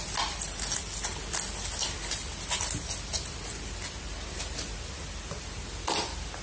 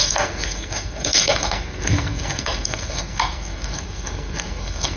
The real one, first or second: first